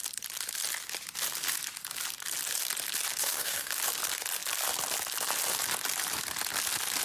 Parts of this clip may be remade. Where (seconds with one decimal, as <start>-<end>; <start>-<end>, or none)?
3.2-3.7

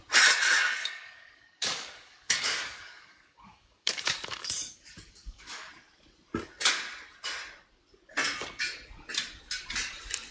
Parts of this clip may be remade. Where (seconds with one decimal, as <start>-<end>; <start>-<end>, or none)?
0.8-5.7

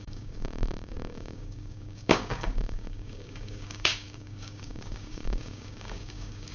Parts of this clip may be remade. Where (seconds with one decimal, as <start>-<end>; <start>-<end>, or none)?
0.0-6.5